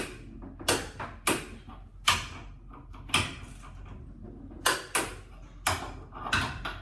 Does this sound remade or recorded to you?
recorded